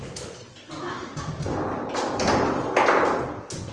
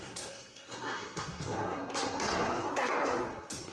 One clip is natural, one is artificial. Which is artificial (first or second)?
second